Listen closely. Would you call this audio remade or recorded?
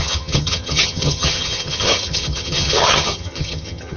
remade